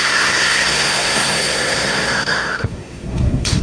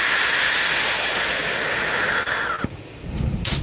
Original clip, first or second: second